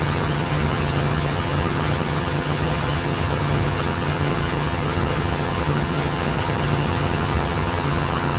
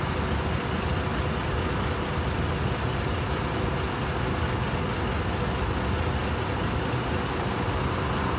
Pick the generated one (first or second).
first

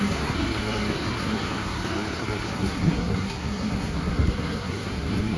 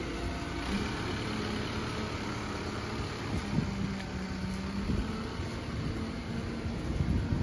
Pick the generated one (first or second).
first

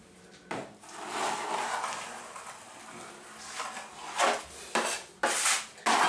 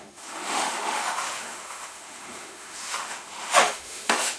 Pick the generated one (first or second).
second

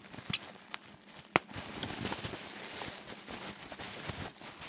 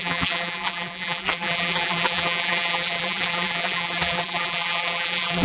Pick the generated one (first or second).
second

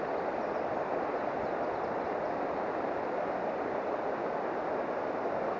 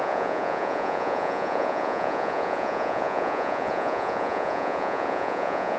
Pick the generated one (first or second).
second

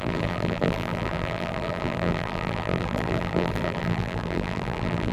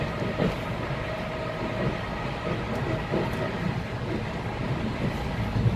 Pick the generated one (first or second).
first